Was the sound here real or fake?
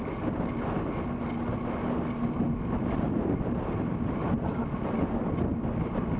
real